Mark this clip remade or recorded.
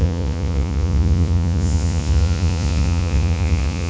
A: remade